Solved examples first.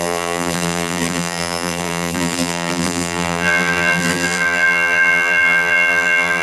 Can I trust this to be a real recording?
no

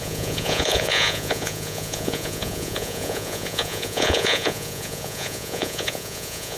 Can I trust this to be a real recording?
no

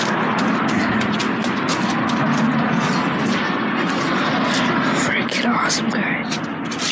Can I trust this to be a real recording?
yes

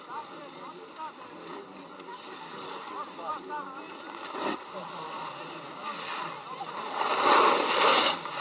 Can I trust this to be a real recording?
yes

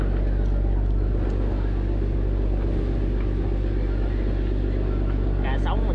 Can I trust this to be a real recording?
yes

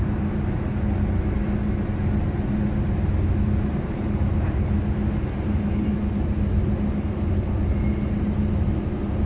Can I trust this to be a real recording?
yes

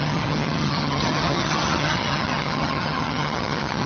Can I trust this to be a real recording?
no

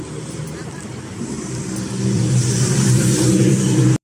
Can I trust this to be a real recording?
no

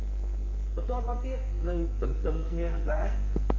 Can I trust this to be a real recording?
no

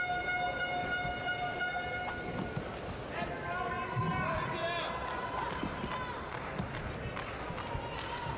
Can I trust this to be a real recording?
yes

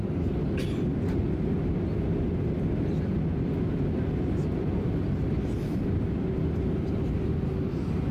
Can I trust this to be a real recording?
yes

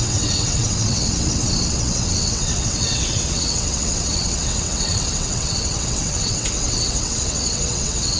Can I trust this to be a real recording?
no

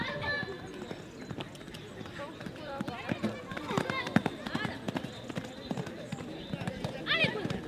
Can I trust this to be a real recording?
yes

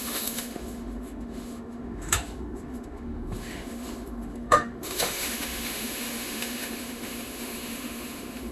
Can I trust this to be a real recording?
no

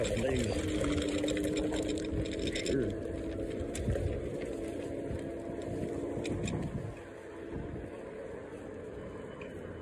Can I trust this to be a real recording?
yes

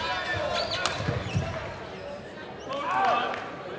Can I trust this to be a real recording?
yes